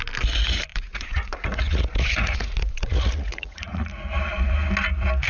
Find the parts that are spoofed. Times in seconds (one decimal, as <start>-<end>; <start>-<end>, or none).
0.7-3.9